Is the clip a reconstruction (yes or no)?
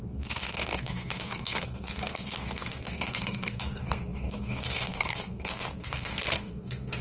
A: yes